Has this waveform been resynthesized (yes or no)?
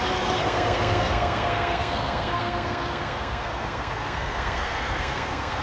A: yes